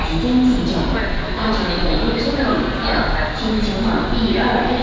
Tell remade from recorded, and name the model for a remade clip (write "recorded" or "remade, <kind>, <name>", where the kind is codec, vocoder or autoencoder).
recorded